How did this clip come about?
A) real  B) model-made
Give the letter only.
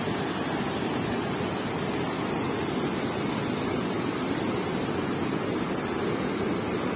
A